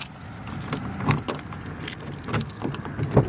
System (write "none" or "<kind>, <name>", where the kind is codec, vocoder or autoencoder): none